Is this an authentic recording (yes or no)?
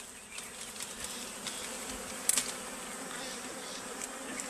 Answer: yes